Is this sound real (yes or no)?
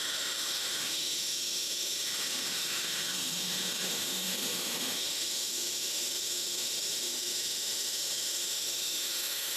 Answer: no